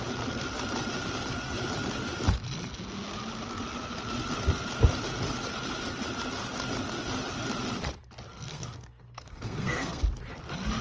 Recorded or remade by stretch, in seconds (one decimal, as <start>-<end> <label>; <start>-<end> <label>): 0.0-8.3 recorded; 8.3-10.0 remade; 10.0-10.8 recorded